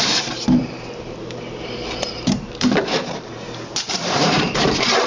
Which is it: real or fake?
fake